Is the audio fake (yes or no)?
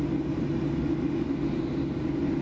no